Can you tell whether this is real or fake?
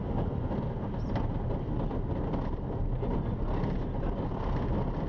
real